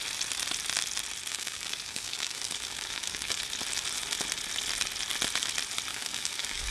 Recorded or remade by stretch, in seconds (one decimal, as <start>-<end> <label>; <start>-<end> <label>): 0.0-1.3 recorded; 1.3-3.4 remade; 3.4-5.9 recorded; 5.9-6.7 remade